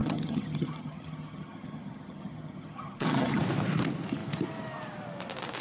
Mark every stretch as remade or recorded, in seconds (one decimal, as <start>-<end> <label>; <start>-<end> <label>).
0.0-3.4 remade; 3.4-5.6 recorded

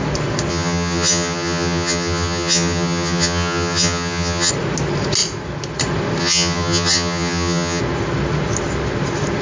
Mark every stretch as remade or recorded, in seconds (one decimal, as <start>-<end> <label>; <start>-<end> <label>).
0.0-0.5 recorded; 0.5-4.5 remade; 4.5-6.2 recorded; 6.2-7.8 remade; 7.8-9.4 recorded

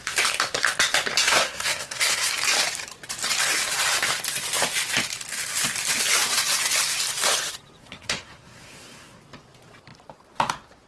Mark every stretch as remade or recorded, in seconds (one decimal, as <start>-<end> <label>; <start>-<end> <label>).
0.0-1.2 recorded; 1.2-2.3 remade; 2.3-7.8 recorded; 7.8-9.2 remade; 9.2-10.9 recorded

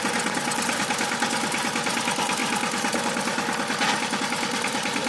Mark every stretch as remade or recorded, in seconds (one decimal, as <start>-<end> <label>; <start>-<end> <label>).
0.0-5.1 recorded

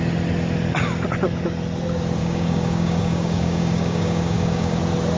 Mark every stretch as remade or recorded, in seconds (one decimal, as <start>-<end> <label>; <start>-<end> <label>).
0.0-2.2 recorded; 2.2-4.8 remade; 4.8-5.2 recorded

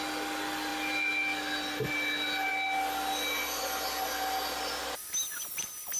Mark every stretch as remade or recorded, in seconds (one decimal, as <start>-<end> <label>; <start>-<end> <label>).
0.0-6.0 recorded

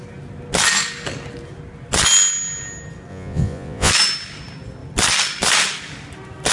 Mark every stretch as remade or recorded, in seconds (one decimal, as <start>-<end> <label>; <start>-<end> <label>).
0.0-3.1 recorded; 3.1-3.9 remade; 3.9-6.5 recorded

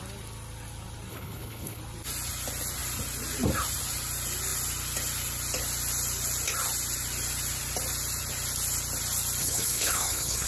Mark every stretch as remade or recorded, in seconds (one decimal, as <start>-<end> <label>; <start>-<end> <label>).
0.0-1.1 recorded; 1.1-1.8 remade; 1.8-9.4 recorded; 9.4-10.5 remade